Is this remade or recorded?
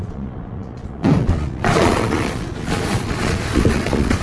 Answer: remade